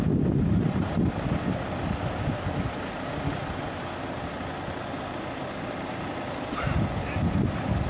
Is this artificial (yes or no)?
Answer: no